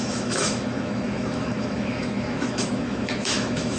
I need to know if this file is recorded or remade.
remade